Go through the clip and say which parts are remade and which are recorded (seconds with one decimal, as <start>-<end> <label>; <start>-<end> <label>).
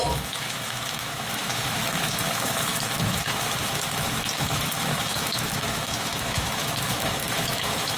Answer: 0.0-8.0 remade